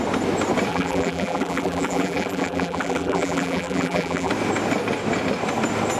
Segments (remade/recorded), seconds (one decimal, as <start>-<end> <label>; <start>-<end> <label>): 0.0-0.7 recorded; 0.7-4.3 remade; 4.3-6.0 recorded